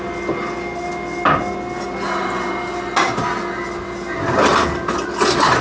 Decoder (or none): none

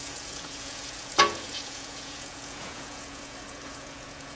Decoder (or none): vocoder, Vocos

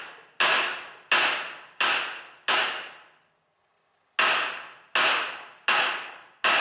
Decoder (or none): none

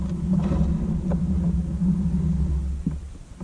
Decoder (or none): none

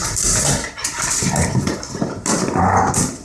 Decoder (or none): none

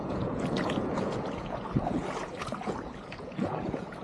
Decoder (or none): vocoder, Vocos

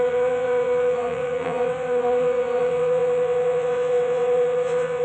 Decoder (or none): vocoder, WaveNeXt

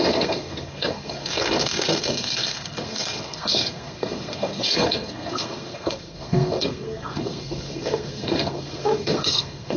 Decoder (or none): codec, SNAC